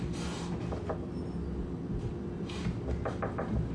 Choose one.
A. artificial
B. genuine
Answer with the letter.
B